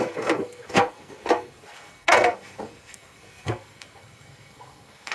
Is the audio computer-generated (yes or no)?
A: yes